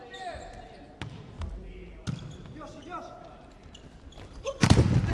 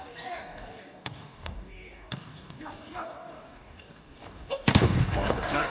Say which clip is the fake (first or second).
second